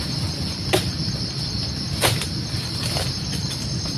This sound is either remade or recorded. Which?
recorded